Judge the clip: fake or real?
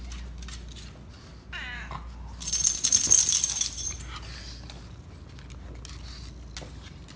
real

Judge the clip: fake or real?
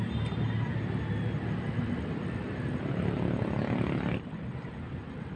real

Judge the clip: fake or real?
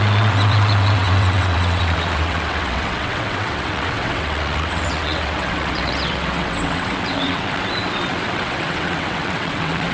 fake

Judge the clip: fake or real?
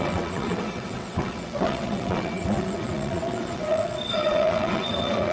fake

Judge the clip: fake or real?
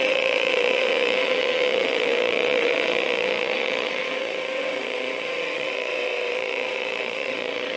fake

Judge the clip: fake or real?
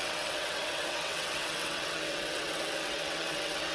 fake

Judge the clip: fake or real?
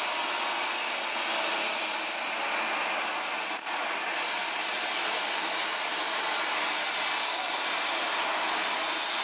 real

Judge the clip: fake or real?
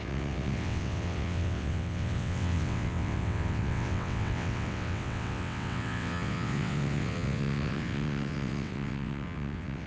fake